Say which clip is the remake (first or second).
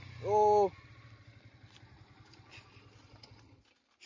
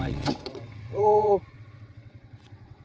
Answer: second